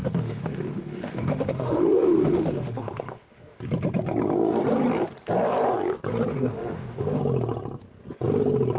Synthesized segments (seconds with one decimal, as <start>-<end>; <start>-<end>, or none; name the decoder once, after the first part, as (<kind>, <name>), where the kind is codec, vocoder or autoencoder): 0.0-3.6 (autoencoder, DAC-VAE); 6.3-7.2